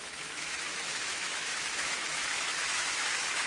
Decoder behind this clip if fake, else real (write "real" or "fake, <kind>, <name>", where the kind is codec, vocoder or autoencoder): fake, autoencoder, DAC-VAE